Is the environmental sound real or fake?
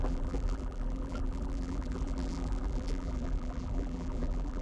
fake